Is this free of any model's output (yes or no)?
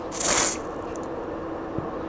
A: yes